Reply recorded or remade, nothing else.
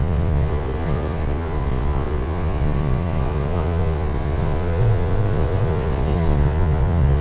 remade